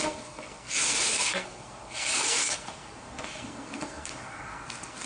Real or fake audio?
fake